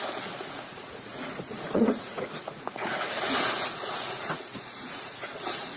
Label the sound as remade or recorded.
remade